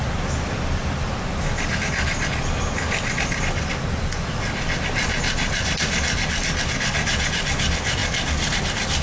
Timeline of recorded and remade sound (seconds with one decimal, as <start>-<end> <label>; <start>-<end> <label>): 0.0-9.0 recorded